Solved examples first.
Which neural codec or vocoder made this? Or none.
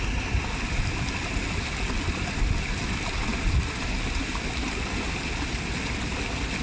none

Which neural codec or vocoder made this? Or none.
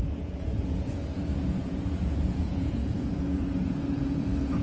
vocoder, Vocos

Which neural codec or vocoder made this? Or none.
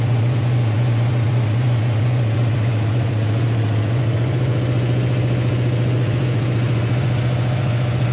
vocoder, Vocos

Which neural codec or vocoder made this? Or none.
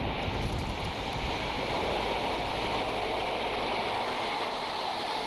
none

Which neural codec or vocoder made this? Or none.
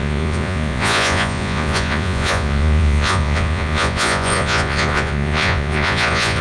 vocoder, Vocos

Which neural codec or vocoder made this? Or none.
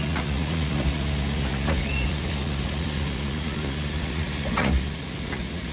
vocoder, Vocos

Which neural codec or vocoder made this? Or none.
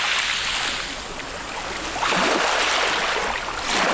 none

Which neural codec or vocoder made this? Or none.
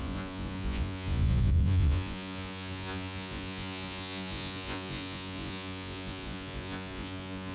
vocoder, Vocos